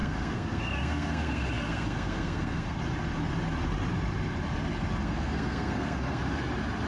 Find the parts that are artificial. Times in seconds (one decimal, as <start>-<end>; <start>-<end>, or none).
0.0-2.8; 5.0-6.2